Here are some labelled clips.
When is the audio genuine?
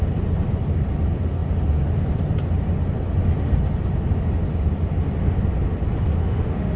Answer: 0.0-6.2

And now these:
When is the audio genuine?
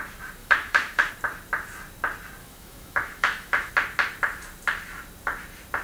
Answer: 0.0-0.4; 1.1-2.4; 3.7-5.8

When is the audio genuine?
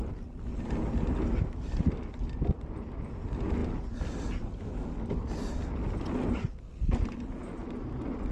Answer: 0.0-8.3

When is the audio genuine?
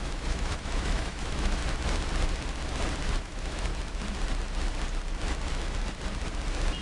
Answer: 1.6-3.2; 3.7-6.8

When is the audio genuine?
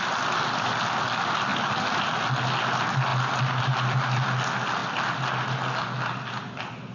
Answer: 0.0-6.9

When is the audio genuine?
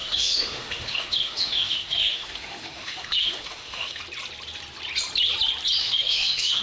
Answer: 4.0-5.8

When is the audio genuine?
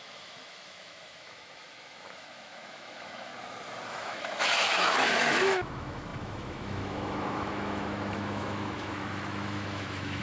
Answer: 3.3-3.9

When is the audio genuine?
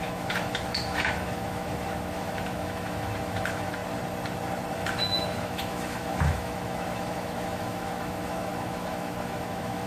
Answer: 3.8-4.7